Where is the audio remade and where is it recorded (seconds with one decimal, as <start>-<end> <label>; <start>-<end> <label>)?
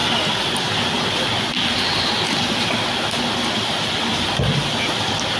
0.0-5.4 recorded